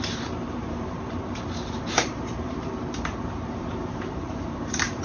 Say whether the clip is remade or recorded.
remade